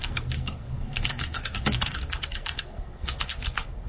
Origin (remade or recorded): remade